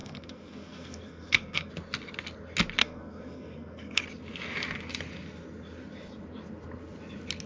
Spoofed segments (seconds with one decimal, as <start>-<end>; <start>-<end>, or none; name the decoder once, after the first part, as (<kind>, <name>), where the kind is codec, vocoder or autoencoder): 0.0-1.7 (codec, SNAC); 2.8-4.0